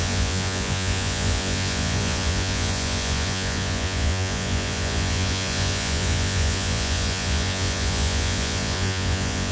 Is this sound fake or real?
fake